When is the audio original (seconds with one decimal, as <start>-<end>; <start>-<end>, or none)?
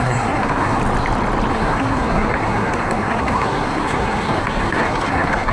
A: 0.8-1.5